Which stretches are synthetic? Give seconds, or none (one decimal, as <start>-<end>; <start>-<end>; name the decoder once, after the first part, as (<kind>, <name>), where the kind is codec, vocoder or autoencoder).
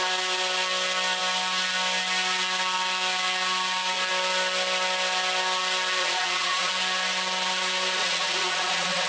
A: 6.0-6.7 (vocoder, Vocos); 8.0-9.1